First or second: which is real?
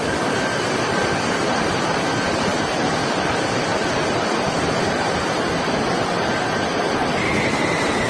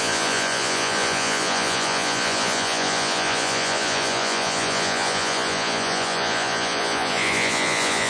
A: first